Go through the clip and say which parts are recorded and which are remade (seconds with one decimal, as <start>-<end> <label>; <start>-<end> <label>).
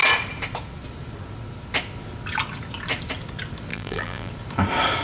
0.0-3.7 recorded; 3.7-4.3 remade; 4.3-5.0 recorded